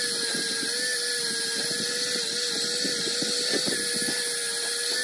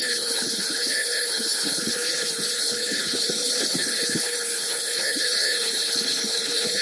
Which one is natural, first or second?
first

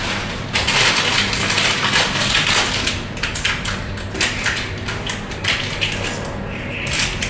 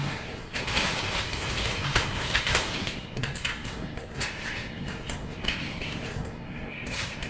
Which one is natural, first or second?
first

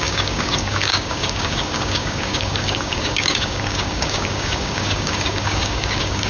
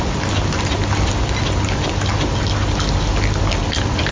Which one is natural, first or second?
second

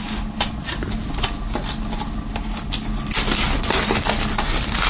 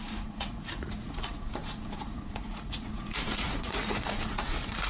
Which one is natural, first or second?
first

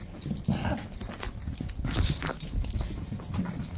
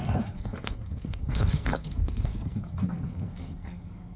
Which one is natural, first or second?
first